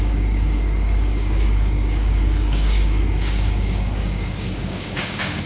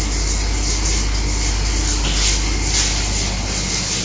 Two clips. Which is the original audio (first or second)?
second